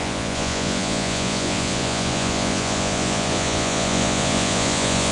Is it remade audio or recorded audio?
remade